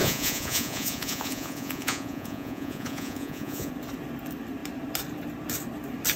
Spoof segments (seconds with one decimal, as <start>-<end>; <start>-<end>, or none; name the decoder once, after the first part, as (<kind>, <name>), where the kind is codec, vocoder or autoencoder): 0.0-3.7 (vocoder, Vocos)